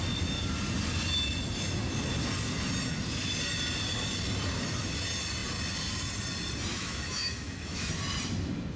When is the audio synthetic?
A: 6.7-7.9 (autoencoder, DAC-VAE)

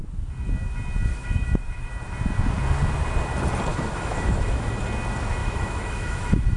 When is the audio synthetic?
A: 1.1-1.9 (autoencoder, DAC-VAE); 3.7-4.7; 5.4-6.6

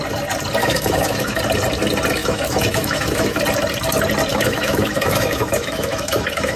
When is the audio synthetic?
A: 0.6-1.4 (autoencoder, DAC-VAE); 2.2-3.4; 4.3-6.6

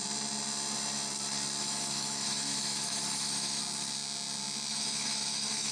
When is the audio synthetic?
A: 1.6-3.6 (autoencoder, DAC-VAE); 4.7-5.7

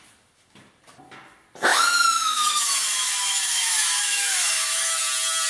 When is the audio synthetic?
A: 1.7-5.0 (autoencoder, DAC-VAE)

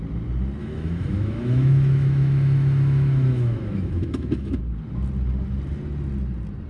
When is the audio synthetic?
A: 0.6-4.6 (autoencoder, DAC-VAE)